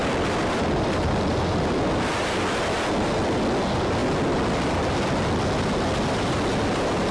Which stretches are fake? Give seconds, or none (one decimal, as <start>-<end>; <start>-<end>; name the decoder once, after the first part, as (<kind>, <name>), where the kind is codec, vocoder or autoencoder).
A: none